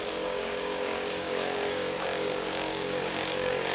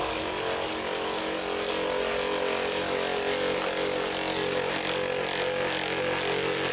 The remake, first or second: first